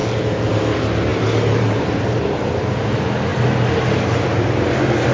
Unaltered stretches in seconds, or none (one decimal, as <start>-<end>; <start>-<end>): 0.0-1.1; 2.0-3.3; 4.3-5.1